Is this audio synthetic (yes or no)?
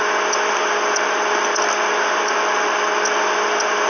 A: no